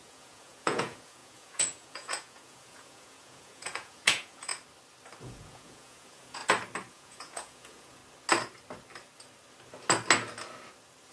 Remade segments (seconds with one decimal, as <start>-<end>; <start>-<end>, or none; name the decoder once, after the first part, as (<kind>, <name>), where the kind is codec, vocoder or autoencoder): 0.0-4.5 (vocoder, Vocos); 5.2-6.4; 6.9-8.0